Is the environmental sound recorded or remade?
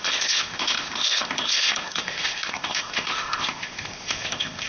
remade